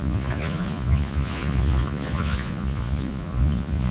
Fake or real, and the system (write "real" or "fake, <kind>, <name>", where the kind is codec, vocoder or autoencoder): fake, vocoder, Vocos